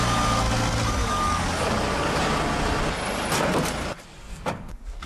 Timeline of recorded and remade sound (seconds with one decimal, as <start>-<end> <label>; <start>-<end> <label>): 0.0-1.0 recorded; 1.0-2.2 remade; 2.2-4.3 recorded; 4.3-5.1 remade